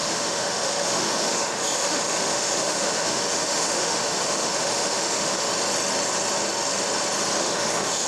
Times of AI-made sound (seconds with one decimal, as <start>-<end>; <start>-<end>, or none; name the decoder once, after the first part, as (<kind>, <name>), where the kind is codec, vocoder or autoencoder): 0.0-5.5 (autoencoder, DAC-VAE); 7.4-8.1